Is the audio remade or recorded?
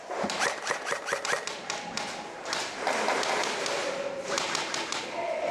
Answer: recorded